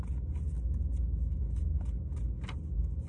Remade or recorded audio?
recorded